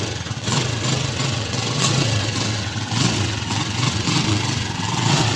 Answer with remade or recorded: remade